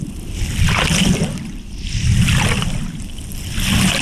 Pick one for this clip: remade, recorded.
recorded